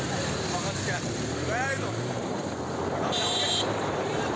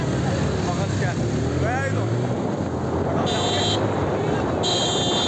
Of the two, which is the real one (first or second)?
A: second